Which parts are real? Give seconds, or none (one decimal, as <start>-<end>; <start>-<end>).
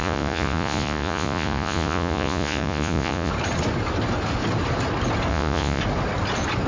3.3-5.3; 5.8-6.7